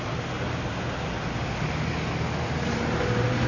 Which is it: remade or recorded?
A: recorded